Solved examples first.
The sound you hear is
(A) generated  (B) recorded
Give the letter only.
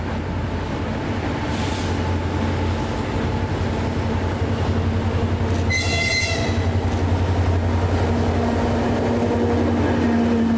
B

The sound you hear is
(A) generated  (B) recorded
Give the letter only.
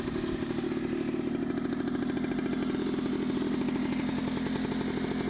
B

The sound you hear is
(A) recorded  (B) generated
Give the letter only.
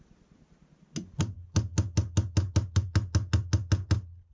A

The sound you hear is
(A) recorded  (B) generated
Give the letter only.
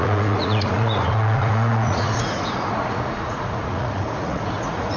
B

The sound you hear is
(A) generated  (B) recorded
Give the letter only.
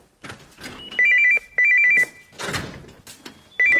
B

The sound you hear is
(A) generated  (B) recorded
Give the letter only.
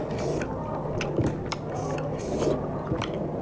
B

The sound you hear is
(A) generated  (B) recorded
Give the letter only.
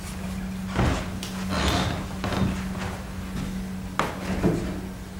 B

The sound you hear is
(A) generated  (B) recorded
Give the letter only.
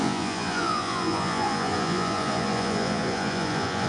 A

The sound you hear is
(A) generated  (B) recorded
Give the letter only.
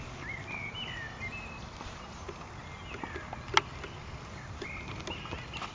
B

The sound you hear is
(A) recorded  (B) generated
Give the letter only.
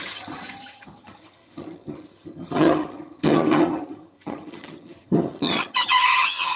B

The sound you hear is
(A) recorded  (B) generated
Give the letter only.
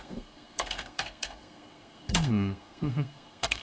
B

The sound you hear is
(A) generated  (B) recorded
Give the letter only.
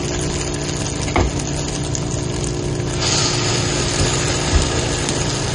B